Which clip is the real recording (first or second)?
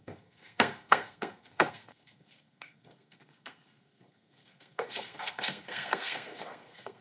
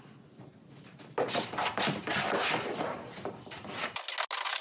second